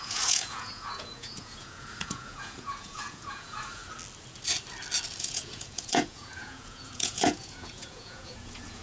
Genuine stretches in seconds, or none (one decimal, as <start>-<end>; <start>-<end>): 3.8-5.2